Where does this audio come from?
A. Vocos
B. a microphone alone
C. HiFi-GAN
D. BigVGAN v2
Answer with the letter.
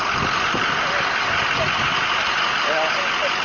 B